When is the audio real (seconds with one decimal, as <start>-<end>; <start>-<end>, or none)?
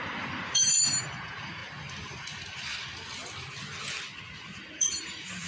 1.6-4.2